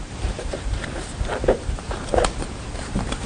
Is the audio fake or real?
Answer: fake